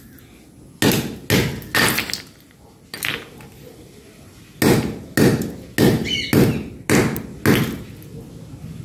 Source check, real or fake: real